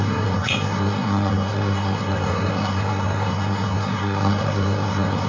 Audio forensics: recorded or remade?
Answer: remade